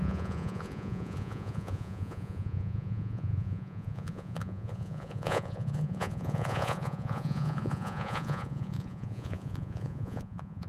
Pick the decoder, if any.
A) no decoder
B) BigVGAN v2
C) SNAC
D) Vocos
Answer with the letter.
D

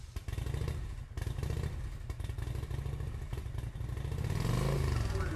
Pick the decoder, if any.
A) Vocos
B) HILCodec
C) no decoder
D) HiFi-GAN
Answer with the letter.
C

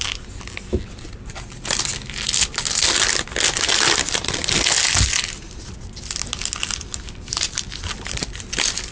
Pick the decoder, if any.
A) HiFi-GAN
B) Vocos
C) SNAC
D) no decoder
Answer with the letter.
D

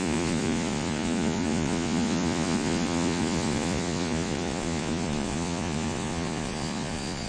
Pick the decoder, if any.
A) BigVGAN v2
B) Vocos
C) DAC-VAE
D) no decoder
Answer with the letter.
B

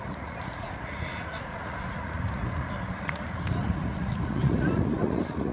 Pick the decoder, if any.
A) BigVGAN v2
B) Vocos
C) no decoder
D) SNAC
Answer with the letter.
B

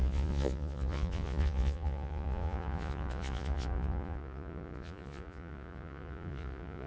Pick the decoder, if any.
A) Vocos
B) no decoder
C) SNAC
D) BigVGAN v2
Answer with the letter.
A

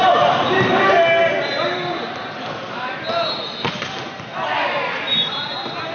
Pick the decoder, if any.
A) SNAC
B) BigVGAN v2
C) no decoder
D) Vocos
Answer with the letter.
C